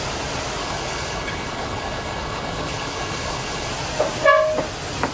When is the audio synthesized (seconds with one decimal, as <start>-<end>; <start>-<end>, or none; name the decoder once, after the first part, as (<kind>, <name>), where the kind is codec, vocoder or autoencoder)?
0.6-3.7 (codec, HILCodec)